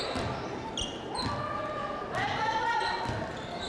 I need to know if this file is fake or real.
real